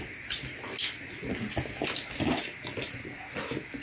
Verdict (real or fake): real